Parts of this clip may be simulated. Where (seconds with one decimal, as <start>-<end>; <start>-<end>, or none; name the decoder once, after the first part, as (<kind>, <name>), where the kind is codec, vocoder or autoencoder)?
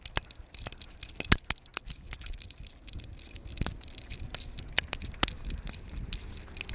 none